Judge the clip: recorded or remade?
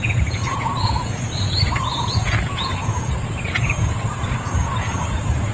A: remade